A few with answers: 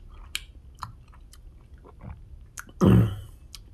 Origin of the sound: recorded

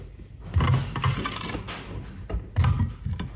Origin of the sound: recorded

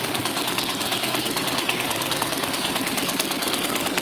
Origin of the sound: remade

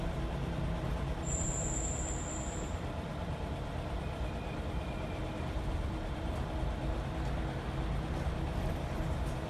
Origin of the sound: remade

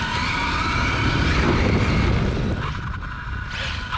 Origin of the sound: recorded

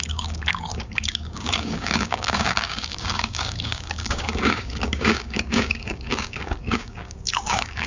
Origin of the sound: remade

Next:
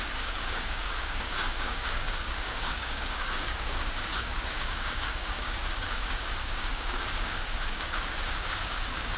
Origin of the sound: remade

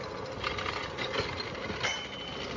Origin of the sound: recorded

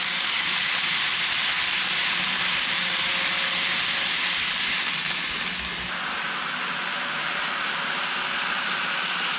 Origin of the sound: recorded